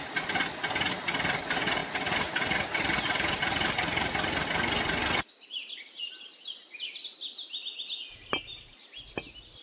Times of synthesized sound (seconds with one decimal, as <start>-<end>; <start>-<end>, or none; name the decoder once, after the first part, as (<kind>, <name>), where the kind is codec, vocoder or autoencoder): none